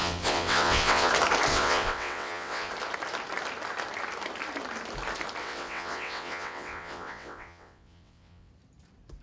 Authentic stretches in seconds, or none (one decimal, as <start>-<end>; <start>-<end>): 1.1-1.5; 2.7-5.4; 8.5-9.2

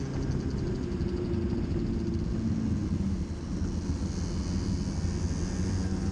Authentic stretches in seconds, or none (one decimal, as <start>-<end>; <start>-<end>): 0.0-6.1

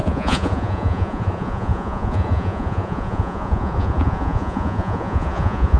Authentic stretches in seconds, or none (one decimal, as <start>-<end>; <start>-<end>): none

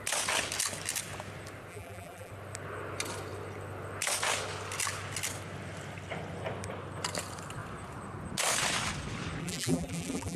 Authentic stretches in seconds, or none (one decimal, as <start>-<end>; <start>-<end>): 0.0-1.7; 2.3-9.4

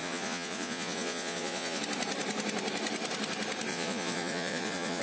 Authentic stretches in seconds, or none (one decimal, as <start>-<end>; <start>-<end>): 1.8-3.7

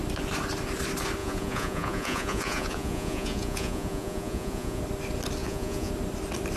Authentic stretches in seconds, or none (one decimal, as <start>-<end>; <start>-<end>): 0.0-1.2; 4.8-5.4; 5.9-6.6